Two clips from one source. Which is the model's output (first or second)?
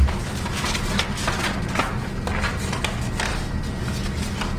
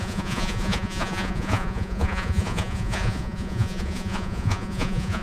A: second